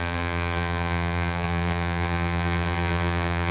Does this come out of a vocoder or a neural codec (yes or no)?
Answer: yes